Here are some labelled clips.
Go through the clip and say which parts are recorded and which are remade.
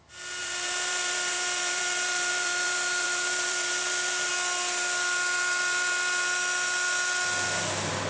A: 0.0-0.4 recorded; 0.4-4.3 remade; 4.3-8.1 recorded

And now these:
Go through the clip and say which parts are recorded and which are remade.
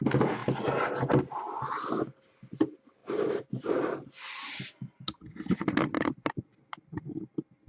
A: 0.0-7.7 recorded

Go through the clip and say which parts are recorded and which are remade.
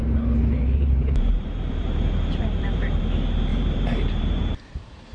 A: 0.0-3.0 remade; 3.0-3.5 recorded; 3.5-4.5 remade; 4.5-5.1 recorded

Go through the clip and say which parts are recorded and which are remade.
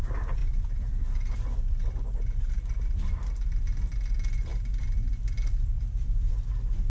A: 0.0-0.4 recorded; 0.4-0.9 remade; 0.9-4.5 recorded; 4.5-6.3 remade; 6.3-6.9 recorded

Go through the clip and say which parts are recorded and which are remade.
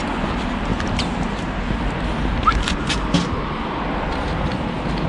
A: 0.0-0.7 recorded; 0.7-1.6 remade; 1.6-5.1 recorded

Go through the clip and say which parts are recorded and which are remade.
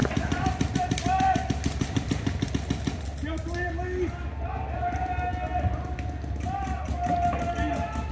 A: 0.0-2.5 remade; 2.5-8.1 recorded